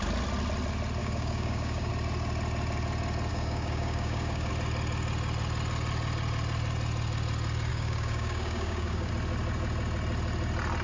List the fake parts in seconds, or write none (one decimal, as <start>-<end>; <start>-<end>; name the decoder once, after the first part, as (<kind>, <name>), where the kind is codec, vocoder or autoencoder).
1.0-1.9 (codec, DAC); 3.3-4.5; 7.7-9.1